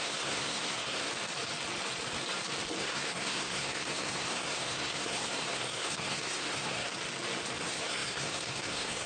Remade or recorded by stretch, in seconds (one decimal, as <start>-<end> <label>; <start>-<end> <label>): 0.0-1.1 remade; 1.1-2.8 recorded; 2.8-6.9 remade; 6.9-7.6 recorded; 7.6-9.1 remade